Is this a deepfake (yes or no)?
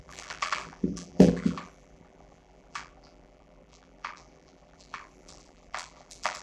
yes